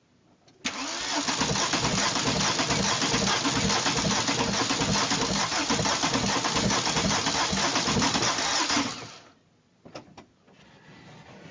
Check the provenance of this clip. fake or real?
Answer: real